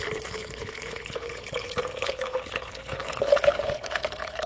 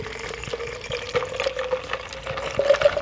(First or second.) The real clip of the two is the second